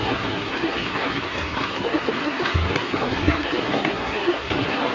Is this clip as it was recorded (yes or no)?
no